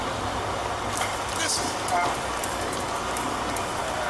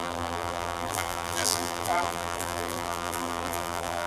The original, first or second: first